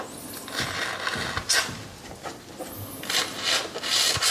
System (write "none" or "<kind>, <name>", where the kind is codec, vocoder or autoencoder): none